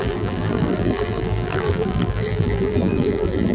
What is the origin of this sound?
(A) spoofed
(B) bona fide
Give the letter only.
A